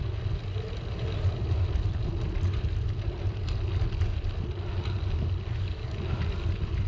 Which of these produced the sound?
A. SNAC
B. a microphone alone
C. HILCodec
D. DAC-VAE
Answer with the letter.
B